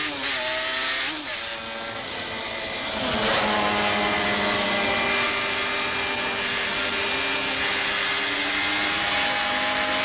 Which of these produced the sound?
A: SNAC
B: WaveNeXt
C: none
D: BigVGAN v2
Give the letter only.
C